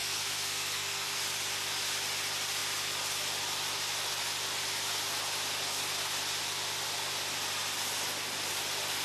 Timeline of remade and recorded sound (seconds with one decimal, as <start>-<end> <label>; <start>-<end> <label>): 0.0-1.2 remade; 1.2-9.0 recorded